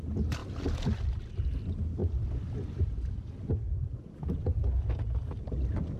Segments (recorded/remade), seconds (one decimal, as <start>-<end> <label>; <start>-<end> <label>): 0.0-6.0 recorded